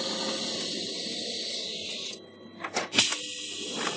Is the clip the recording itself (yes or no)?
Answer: yes